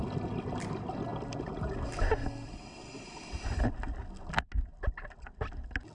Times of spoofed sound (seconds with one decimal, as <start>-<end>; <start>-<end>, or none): none